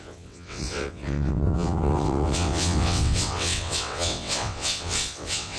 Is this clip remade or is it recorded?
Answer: remade